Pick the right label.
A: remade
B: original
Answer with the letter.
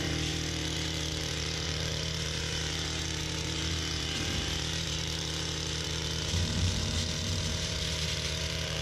A